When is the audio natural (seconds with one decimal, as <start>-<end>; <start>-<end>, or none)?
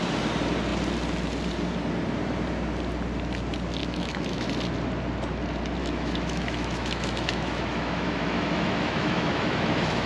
0.0-3.8; 4.5-5.8